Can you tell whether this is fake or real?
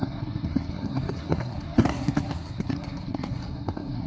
fake